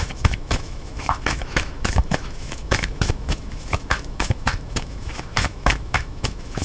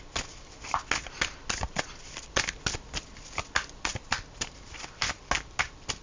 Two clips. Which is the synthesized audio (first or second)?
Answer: first